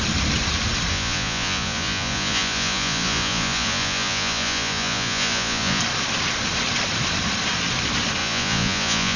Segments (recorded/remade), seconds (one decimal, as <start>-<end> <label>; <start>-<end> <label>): 0.0-0.9 recorded; 0.9-5.8 remade; 5.8-8.2 recorded; 8.2-9.2 remade